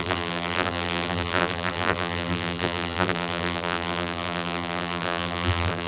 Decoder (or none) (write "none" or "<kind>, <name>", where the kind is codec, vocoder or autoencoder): vocoder, BigVGAN v2